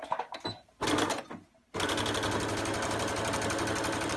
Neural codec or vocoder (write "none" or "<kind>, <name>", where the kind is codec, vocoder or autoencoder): none